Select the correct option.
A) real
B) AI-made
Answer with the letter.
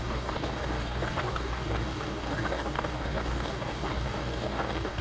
B